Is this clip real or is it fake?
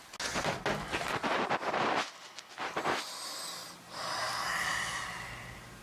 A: real